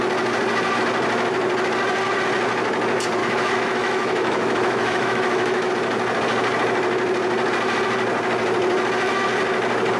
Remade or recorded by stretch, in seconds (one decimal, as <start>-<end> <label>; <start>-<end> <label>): 0.0-3.2 recorded; 3.2-5.7 remade; 5.7-10.0 recorded